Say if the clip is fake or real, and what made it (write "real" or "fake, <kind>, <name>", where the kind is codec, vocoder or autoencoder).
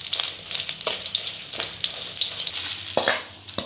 real